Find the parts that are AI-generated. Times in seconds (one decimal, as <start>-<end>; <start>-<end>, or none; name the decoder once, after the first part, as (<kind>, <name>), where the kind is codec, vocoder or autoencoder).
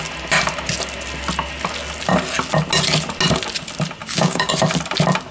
4.0-4.5 (codec, DAC)